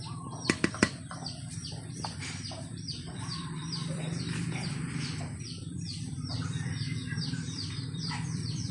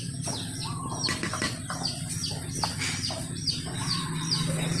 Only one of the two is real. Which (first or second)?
second